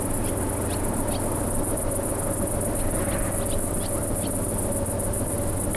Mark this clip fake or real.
real